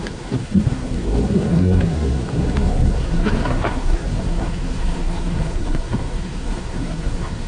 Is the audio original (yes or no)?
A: no